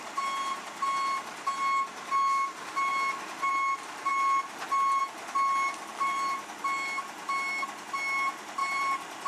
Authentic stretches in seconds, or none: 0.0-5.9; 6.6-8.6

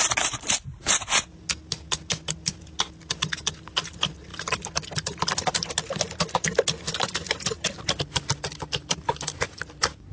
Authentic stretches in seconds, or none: 0.0-4.3; 5.7-10.1

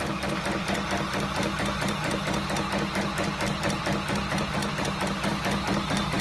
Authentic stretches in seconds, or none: 0.0-4.6; 5.3-6.2

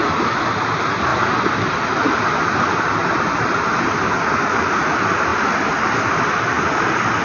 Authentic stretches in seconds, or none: 0.0-1.1; 2.4-3.0; 3.6-7.2

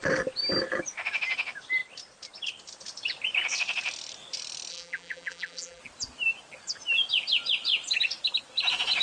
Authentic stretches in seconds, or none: 0.0-4.7; 5.8-9.0

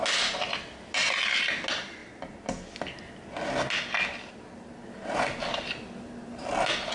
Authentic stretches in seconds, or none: 0.0-6.9

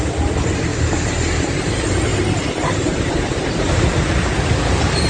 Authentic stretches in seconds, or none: 0.7-1.5; 2.1-2.8

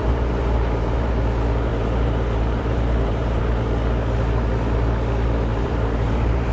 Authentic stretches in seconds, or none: 1.1-1.7; 3.4-5.5